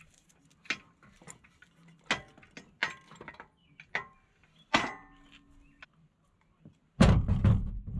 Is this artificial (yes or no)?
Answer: no